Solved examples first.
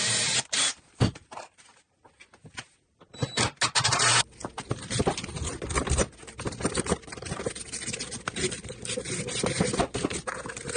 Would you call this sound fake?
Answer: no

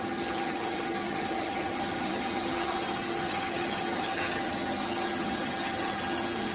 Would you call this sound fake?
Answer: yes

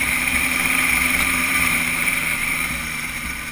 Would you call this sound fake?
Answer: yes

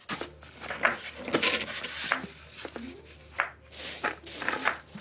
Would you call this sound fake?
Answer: no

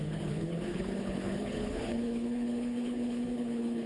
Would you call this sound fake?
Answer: yes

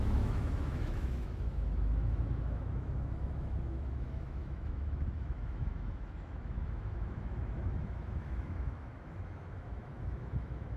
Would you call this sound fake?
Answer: yes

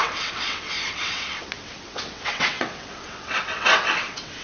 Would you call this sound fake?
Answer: yes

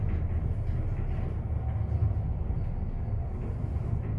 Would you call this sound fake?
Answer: no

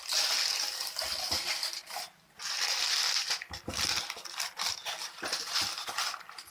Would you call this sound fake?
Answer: no